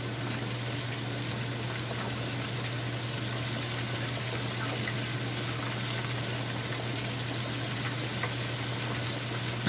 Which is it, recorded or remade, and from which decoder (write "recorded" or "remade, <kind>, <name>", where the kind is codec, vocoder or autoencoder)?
recorded